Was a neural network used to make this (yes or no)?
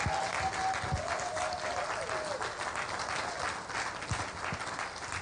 no